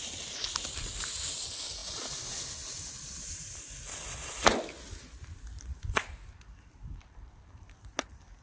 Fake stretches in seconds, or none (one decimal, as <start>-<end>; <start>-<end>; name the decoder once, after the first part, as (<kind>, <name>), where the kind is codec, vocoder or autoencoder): none